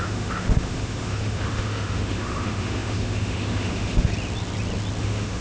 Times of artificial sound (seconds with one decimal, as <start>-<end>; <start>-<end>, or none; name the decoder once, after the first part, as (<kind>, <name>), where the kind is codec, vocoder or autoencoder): 0.0-4.1 (autoencoder, DAC-VAE); 5.0-5.4